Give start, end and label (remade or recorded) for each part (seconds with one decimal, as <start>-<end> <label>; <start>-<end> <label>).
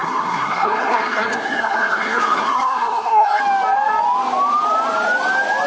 0.0-3.4 remade; 3.4-5.7 recorded